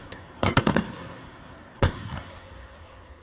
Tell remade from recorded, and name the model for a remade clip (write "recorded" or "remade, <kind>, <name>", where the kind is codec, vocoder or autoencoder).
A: remade, codec, SNAC